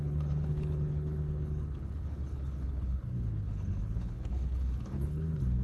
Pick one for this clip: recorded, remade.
remade